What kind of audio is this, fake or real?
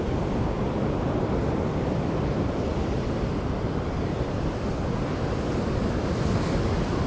fake